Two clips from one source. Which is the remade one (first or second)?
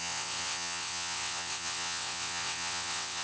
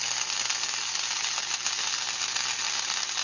first